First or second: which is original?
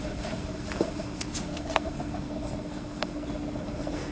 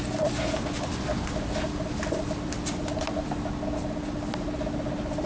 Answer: second